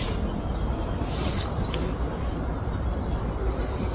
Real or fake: real